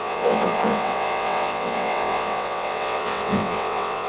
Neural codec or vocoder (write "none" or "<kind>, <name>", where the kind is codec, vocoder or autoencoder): vocoder, WaveNeXt